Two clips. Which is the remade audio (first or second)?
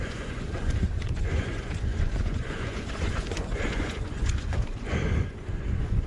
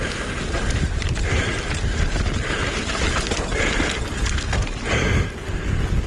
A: first